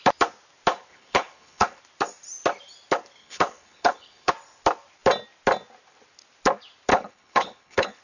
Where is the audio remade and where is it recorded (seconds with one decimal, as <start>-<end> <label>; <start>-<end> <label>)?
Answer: 0.0-0.9 recorded; 0.9-1.8 remade; 1.8-3.2 recorded; 3.2-4.3 remade; 4.3-6.9 recorded; 6.9-8.0 remade